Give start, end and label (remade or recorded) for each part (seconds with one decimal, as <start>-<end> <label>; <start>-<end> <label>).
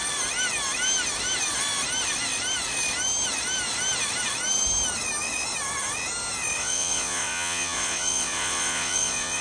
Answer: 0.0-6.6 recorded; 6.6-9.4 remade